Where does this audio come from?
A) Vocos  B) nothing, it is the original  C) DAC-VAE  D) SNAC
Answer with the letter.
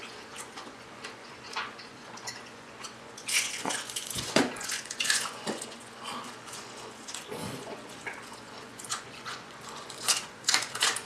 A